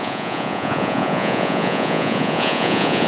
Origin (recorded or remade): remade